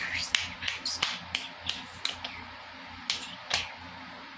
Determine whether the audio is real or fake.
real